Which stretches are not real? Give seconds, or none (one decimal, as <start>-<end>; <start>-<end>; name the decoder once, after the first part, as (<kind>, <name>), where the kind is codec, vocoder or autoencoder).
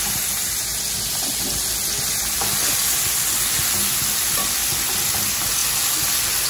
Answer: 0.0-0.7 (vocoder, BigVGAN v2); 4.0-5.6